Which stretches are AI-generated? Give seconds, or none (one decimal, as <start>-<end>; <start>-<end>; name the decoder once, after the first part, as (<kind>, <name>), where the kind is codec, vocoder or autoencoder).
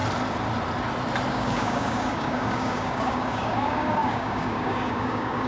1.3-5.5 (codec, DAC)